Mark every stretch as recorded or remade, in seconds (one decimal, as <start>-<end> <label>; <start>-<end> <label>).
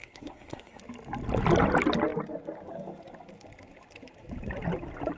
0.0-0.8 remade; 0.8-5.2 recorded